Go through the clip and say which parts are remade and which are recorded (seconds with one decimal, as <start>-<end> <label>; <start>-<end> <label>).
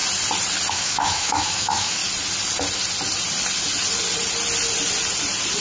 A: 0.0-0.7 recorded; 0.7-2.0 remade; 2.0-5.6 recorded